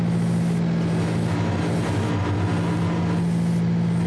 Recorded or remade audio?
recorded